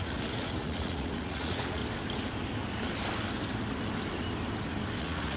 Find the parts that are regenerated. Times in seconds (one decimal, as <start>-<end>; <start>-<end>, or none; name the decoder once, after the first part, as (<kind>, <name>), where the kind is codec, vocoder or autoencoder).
0.0-1.8 (vocoder, Vocos); 5.0-5.4